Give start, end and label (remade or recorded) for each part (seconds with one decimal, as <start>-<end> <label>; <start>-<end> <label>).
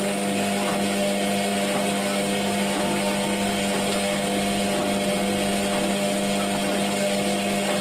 0.0-7.8 recorded